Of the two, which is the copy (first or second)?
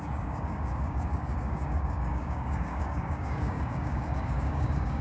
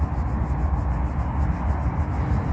first